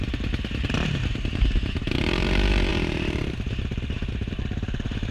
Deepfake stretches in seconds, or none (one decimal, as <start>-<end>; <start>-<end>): 0.0-5.1